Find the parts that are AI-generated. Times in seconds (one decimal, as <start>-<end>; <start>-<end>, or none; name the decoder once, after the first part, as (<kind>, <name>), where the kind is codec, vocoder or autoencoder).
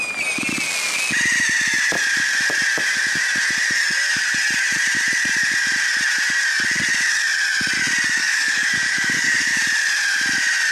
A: 8.2-9.6 (codec, DAC)